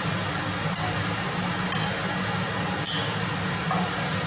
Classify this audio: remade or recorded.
recorded